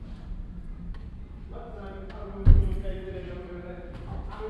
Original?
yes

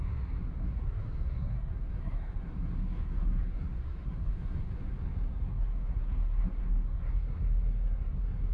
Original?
no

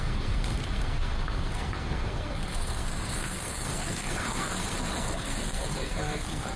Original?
no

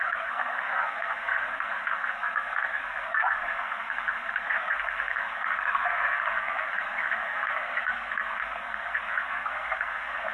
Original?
no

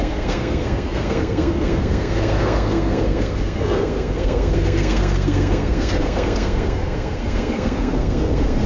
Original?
no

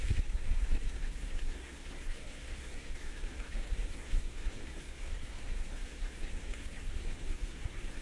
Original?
no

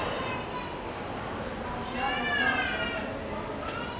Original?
yes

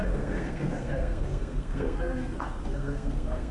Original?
no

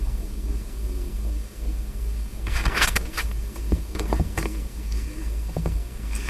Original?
no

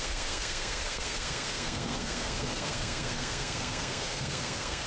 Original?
no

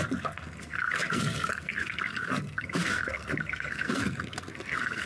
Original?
no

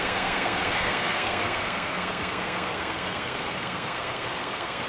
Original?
no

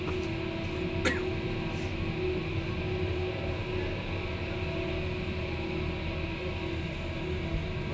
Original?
yes